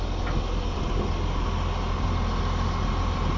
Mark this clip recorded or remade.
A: recorded